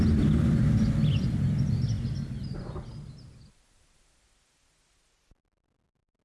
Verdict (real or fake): real